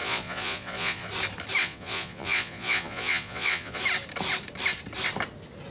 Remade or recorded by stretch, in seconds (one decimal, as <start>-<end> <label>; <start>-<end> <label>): 0.0-1.1 remade; 1.1-1.6 recorded; 1.6-3.8 remade; 3.8-5.7 recorded